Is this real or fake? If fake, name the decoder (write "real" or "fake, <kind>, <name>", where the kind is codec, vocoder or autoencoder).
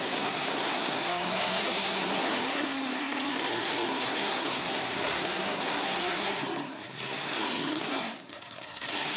fake, codec, SNAC